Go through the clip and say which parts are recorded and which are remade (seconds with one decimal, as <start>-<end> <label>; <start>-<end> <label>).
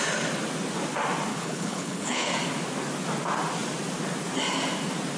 0.0-1.3 recorded; 1.3-2.3 remade; 2.3-5.2 recorded